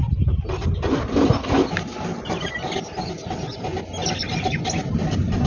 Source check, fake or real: real